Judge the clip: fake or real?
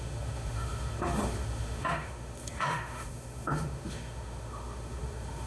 fake